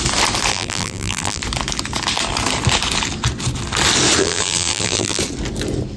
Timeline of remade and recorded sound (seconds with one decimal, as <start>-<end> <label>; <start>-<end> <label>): 0.0-0.5 recorded; 0.5-1.4 remade; 1.4-4.2 recorded; 4.2-5.2 remade; 5.2-6.0 recorded